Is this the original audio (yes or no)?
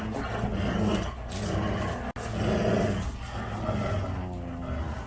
yes